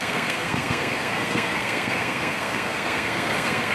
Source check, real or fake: fake